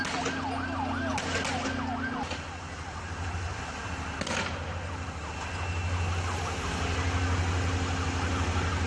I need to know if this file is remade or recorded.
recorded